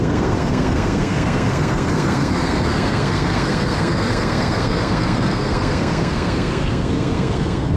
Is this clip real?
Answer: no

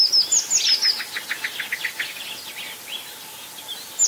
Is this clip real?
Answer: yes